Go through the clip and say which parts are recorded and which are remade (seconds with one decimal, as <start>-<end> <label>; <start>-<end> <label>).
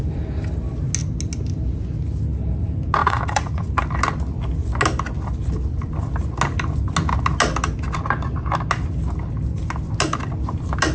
0.0-3.0 recorded; 3.0-3.7 remade; 3.7-10.9 recorded